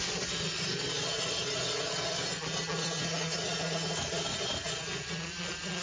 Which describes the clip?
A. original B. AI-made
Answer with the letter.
A